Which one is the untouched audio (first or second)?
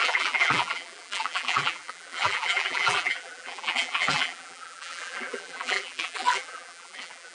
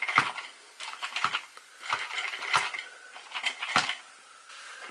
second